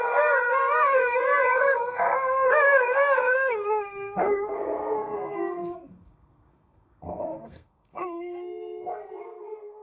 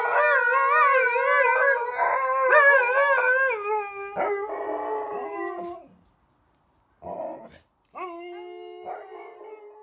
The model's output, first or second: first